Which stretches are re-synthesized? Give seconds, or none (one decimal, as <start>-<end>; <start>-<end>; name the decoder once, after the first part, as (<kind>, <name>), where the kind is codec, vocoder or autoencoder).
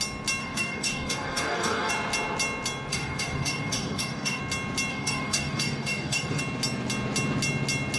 0.4-1.9 (codec, DAC); 2.9-4.4; 4.9-6.4